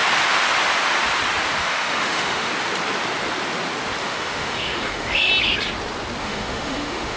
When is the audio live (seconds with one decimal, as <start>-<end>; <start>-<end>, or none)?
0.0-1.6; 2.5-4.0; 5.3-6.2